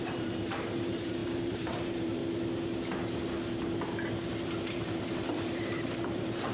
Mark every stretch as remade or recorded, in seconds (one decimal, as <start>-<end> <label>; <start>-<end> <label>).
0.0-2.2 remade; 2.2-4.6 recorded; 4.6-6.5 remade